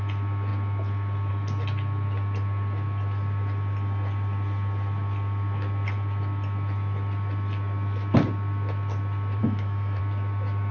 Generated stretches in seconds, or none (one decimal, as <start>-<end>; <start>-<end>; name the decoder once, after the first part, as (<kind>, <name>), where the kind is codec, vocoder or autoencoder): 9.4-10.0 (autoencoder, DAC-VAE)